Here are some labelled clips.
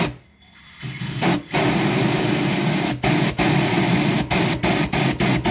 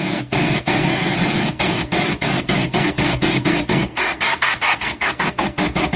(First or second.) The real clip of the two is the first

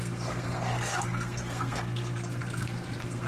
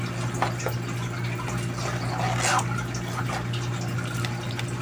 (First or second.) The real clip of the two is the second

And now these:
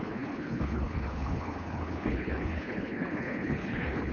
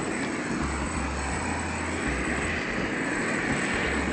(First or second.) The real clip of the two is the second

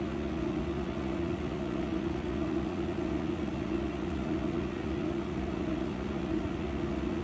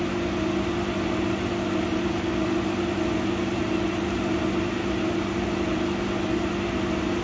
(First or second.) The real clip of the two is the second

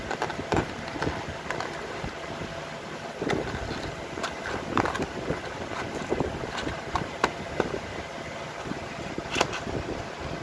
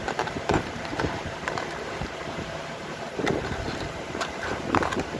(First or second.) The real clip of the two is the first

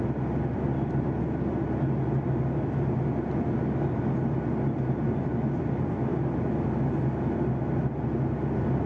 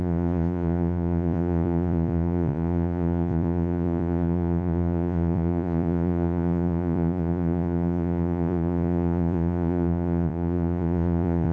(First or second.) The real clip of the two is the first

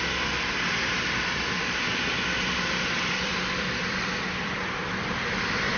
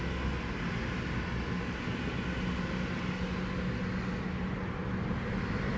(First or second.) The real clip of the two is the second